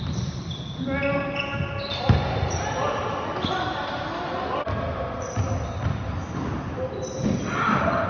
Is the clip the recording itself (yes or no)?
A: yes